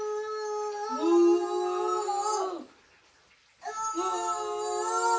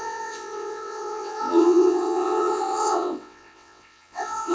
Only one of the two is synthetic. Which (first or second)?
second